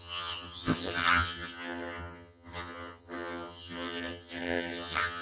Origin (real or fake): fake